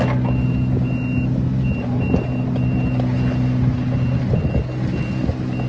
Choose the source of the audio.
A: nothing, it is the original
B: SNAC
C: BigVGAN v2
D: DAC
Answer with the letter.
A